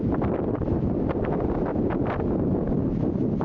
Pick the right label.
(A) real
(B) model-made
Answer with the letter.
A